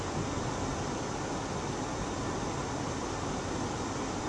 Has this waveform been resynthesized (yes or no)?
no